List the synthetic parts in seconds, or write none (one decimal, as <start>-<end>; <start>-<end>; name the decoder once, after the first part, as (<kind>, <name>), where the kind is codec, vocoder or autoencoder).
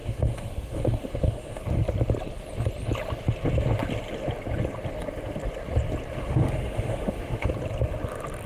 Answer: 0.0-1.6 (autoencoder, DAC-VAE); 6.2-7.5